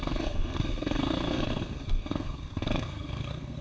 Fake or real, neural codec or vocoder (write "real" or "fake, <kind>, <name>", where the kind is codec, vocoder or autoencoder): fake, codec, SNAC